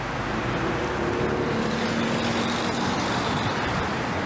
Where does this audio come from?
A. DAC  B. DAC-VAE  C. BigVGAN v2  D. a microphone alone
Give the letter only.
D